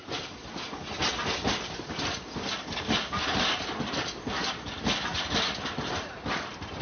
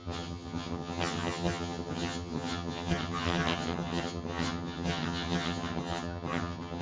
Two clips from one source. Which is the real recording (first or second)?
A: first